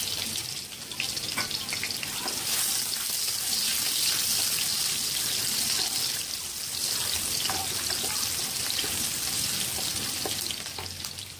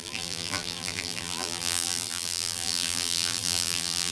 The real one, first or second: first